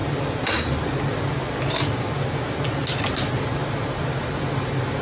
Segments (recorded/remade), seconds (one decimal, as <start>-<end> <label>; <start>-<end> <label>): 0.0-5.0 recorded